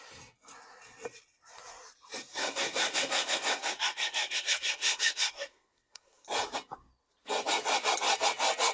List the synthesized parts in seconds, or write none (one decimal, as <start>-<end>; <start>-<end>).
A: 2.3-6.3